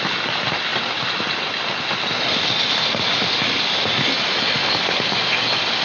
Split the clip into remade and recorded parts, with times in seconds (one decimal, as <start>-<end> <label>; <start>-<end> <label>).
0.0-5.8 recorded